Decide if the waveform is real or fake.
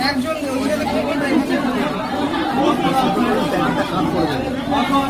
real